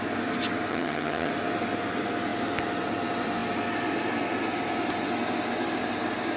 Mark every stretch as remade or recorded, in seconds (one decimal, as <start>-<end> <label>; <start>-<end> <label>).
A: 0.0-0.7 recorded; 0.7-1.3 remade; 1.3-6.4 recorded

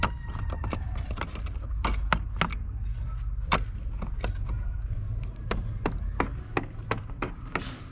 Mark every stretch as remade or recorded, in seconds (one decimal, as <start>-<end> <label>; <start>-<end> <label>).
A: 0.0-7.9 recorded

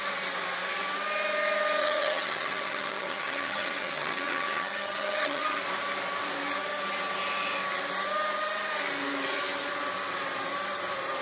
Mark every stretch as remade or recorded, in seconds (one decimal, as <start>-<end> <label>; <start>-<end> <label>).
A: 0.0-1.8 recorded; 1.8-5.6 remade; 5.6-11.2 recorded

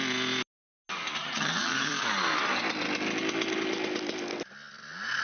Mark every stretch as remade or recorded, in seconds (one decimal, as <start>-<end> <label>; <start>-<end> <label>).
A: 0.0-1.2 recorded; 1.2-1.9 remade; 1.9-5.2 recorded

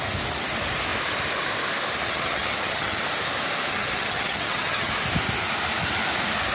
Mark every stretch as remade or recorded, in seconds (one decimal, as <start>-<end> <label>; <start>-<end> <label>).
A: 0.0-2.0 recorded; 2.0-3.0 remade; 3.0-3.7 recorded; 3.7-4.9 remade; 4.9-6.5 recorded